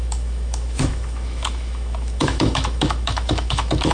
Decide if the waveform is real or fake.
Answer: fake